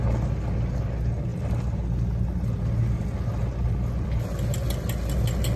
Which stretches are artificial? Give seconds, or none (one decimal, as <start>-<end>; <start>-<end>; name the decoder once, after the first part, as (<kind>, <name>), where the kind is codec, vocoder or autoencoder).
none

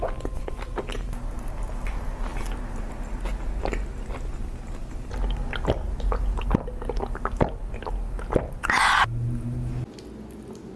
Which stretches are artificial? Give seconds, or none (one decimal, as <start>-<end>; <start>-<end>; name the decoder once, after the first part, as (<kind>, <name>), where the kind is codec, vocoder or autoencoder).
none

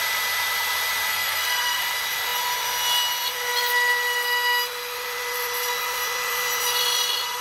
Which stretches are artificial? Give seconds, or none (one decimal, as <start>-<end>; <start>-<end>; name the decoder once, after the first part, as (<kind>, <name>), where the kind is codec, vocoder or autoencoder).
1.1-1.8 (codec, SNAC)

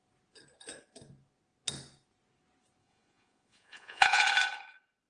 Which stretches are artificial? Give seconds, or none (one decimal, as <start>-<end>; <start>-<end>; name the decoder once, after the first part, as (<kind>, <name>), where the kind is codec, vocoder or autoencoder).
2.8-4.2 (vocoder, Vocos)

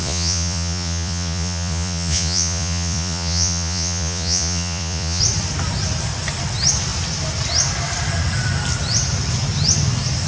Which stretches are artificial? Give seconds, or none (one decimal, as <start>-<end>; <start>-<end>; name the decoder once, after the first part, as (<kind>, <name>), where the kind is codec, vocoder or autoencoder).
0.0-5.2 (vocoder, Vocos)

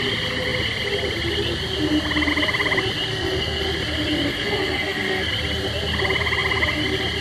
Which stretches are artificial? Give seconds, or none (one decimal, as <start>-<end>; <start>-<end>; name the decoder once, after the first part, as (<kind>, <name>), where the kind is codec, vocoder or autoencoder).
3.1-3.6 (codec, SNAC); 4.3-5.3

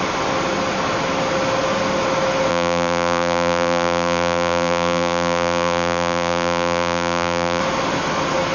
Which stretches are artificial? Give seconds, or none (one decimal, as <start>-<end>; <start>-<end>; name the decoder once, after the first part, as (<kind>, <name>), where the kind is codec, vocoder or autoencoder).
2.5-7.6 (vocoder, BigVGAN v2)